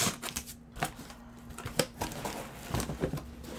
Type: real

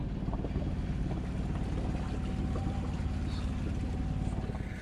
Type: real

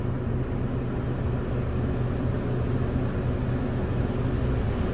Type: real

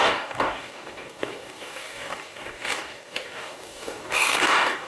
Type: fake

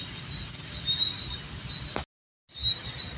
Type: real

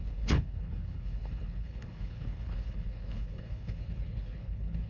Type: fake